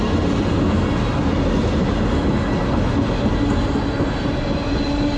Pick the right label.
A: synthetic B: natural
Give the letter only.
B